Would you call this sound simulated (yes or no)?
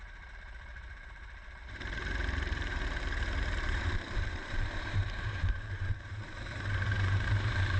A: yes